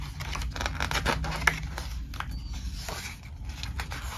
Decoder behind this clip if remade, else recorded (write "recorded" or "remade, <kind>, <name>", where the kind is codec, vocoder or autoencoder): recorded